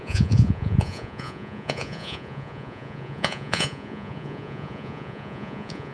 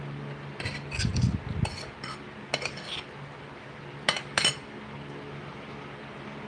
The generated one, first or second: first